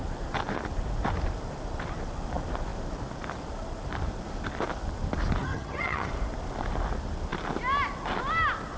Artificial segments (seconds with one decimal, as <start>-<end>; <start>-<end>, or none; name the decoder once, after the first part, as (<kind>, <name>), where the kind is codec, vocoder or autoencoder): 5.4-6.1 (vocoder, HiFi-GAN)

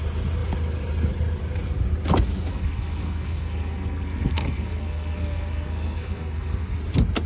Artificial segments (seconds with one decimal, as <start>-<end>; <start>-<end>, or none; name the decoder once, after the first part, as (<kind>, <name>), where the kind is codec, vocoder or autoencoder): 2.5-6.8 (codec, SNAC)